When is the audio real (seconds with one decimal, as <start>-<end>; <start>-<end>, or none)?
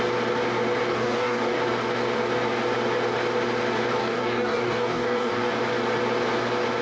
0.0-0.9; 1.6-4.0; 5.5-6.8